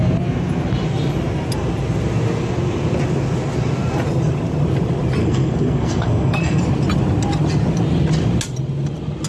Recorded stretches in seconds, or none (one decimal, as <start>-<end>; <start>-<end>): 0.0-5.2; 6.6-9.3